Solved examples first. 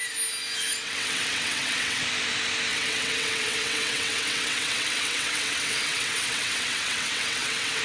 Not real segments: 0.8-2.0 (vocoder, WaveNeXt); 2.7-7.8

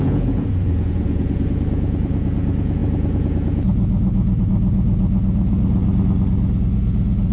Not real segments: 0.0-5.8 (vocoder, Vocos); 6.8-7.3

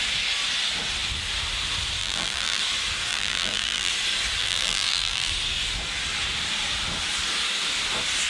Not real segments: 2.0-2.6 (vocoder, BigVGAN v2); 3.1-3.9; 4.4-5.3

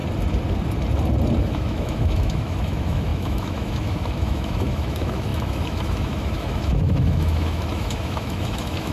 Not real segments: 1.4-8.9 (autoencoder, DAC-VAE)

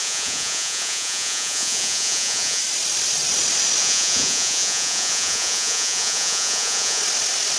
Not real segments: 0.0-2.6 (vocoder, Vocos); 3.8-7.0